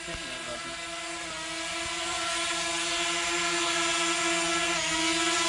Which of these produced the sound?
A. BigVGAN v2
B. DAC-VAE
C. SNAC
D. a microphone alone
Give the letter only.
D